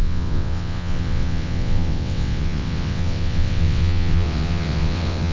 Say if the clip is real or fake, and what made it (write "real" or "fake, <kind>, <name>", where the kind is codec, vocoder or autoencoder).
fake, vocoder, WaveNeXt